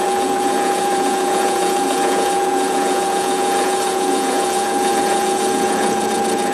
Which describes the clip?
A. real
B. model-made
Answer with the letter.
B